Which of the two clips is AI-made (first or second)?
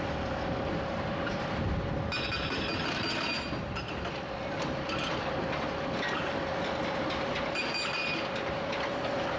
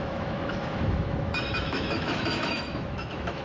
second